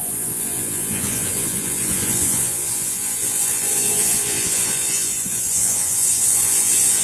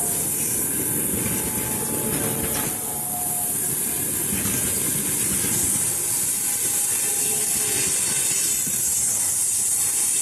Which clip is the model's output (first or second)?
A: first